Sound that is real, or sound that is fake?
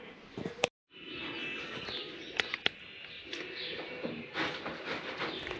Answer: real